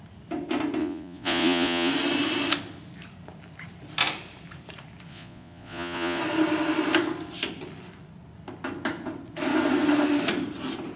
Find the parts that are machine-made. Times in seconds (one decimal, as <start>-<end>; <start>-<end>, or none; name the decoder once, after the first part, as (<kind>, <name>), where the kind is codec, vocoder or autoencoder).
0.8-1.9 (vocoder, Vocos); 5.1-6.2